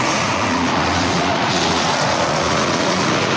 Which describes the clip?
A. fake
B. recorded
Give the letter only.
A